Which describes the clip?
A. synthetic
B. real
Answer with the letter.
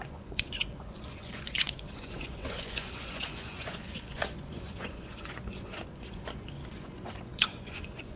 A